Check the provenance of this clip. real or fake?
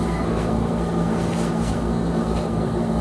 fake